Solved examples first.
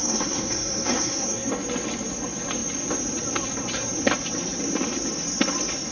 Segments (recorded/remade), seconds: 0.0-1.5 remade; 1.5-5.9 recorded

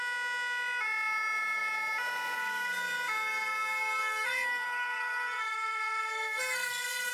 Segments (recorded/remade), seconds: 0.0-4.0 recorded; 4.0-7.1 remade